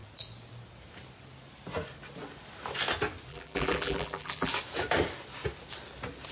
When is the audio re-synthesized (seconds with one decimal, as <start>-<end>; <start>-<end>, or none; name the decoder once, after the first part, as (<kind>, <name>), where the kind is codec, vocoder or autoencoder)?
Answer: 3.3-4.5 (vocoder, BigVGAN v2)